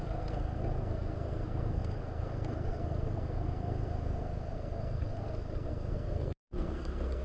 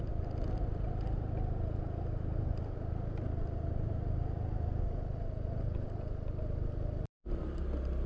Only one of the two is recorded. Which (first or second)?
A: second